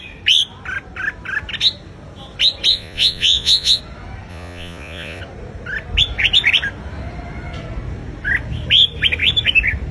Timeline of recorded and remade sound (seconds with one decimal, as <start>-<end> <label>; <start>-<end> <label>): 0.0-2.7 recorded; 2.7-3.8 remade; 3.8-4.3 recorded; 4.3-5.2 remade; 5.2-9.9 recorded